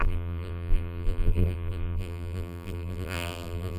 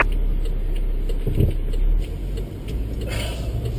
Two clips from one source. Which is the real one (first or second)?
second